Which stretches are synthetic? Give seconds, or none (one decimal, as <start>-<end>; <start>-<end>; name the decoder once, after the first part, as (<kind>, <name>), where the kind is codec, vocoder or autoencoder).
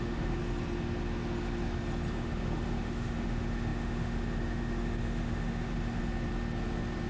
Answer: 0.0-0.4 (autoencoder, DAC-VAE); 2.1-6.0